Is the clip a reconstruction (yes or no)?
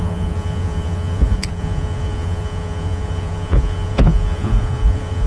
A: yes